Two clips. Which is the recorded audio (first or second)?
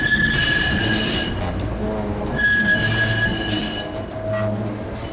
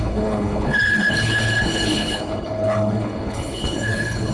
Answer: first